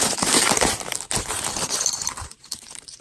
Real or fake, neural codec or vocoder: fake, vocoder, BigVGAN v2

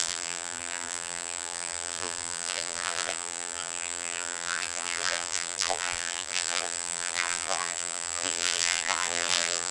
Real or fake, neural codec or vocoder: fake, vocoder, BigVGAN v2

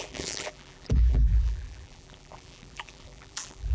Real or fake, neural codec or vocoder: fake, vocoder, BigVGAN v2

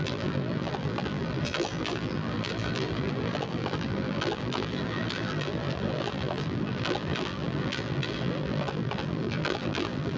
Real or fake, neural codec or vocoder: fake, vocoder, BigVGAN v2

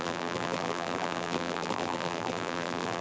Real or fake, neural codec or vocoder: fake, vocoder, BigVGAN v2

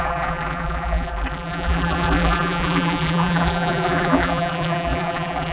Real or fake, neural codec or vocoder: fake, vocoder, BigVGAN v2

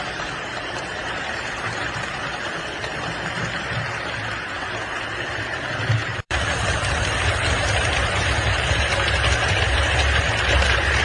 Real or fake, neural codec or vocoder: fake, vocoder, BigVGAN v2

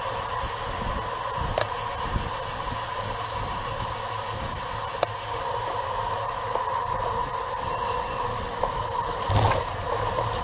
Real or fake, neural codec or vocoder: real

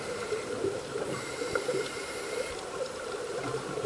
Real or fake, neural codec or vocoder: fake, vocoder, BigVGAN v2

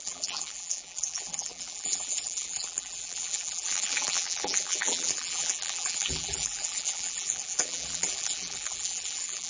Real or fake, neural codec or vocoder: fake, vocoder, BigVGAN v2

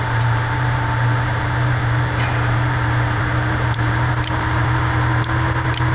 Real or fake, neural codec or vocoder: fake, vocoder, BigVGAN v2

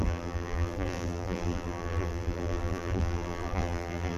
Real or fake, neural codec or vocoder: fake, vocoder, BigVGAN v2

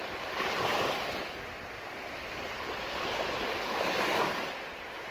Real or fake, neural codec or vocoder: real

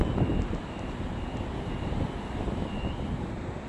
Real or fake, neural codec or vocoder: fake, vocoder, BigVGAN v2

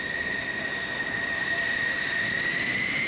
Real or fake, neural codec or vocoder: real